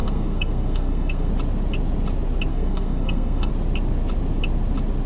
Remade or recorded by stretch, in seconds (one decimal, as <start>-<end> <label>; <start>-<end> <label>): 0.0-1.3 remade; 1.3-2.5 recorded; 2.5-3.5 remade; 3.5-5.1 recorded